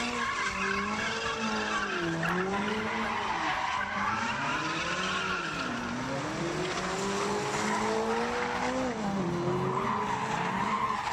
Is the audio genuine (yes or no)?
yes